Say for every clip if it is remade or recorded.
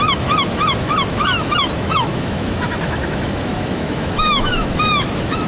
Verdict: remade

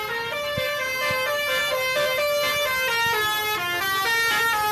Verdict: recorded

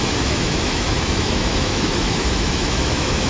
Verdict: remade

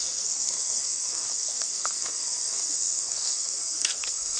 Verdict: remade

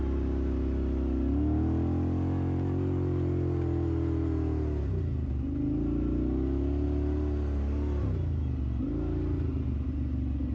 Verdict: recorded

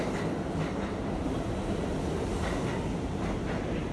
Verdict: recorded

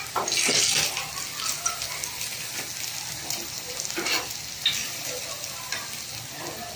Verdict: recorded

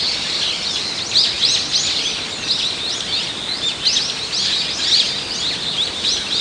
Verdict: recorded